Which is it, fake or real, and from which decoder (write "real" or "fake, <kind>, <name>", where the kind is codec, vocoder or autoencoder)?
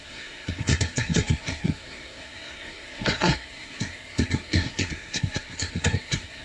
fake, codec, SNAC